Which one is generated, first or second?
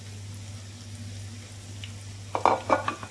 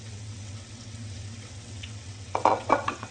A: second